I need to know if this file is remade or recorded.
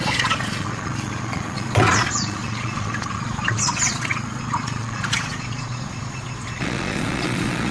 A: remade